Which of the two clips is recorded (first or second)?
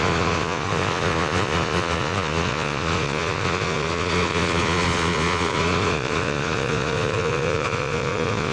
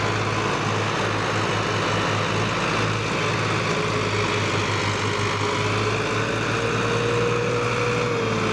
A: second